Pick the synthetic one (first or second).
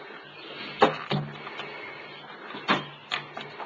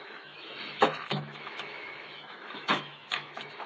second